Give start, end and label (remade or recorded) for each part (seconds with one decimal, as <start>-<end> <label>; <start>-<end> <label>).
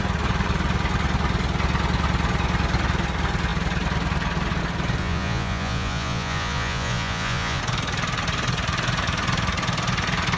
0.0-5.0 recorded; 5.0-7.6 remade; 7.6-10.4 recorded